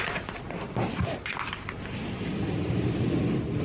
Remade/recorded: recorded